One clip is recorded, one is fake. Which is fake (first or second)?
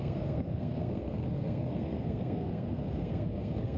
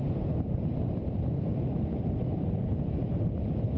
first